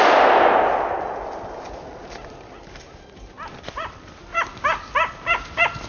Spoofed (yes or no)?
no